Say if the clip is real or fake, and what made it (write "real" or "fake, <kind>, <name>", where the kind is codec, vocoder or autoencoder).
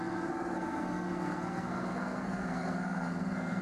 fake, codec, SNAC